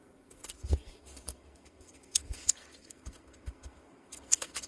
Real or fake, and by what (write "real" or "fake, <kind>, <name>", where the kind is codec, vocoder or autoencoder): fake, codec, SNAC